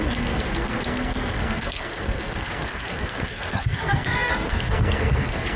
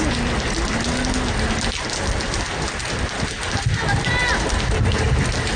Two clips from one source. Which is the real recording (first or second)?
second